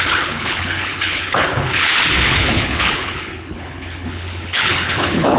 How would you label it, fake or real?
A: fake